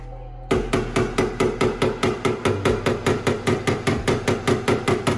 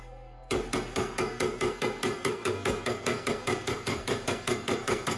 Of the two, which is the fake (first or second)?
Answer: second